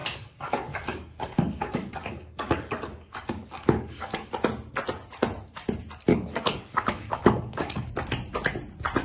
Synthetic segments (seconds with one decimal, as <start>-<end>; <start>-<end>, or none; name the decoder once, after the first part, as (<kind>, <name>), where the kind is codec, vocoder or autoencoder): 0.0-4.3 (codec, DAC); 6.1-7.9